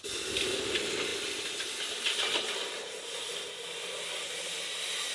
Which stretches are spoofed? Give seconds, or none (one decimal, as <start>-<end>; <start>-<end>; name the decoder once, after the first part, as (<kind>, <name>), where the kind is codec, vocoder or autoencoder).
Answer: none